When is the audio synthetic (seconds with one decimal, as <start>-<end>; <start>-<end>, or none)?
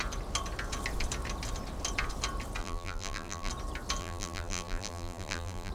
2.6-3.5; 4.0-5.7